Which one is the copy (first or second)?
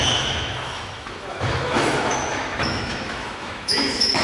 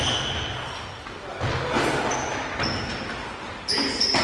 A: first